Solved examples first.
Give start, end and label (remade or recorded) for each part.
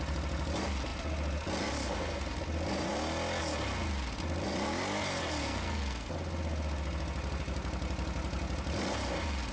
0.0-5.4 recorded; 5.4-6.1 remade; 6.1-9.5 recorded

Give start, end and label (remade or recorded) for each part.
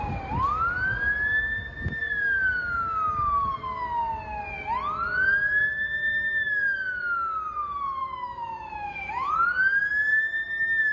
0.0-8.0 recorded; 8.0-9.3 remade; 9.3-10.9 recorded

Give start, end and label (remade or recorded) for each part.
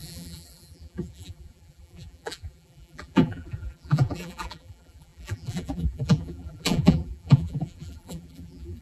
0.0-8.8 remade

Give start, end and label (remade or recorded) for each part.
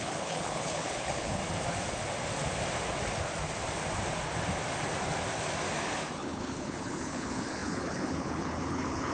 0.0-1.4 remade; 1.4-6.1 recorded; 6.1-9.1 remade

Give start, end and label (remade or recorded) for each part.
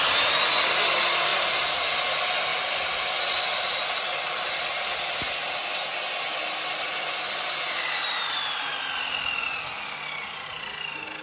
0.0-11.2 recorded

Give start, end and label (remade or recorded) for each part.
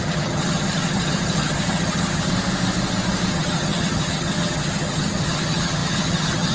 0.0-2.3 remade; 2.3-3.3 recorded; 3.3-6.5 remade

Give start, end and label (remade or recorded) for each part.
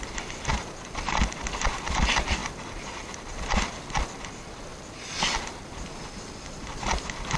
0.0-7.4 recorded